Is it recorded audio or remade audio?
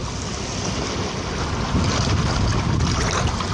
recorded